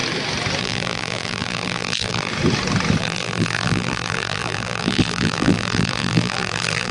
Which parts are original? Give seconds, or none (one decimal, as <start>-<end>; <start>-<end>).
0.0-0.6; 2.3-3.0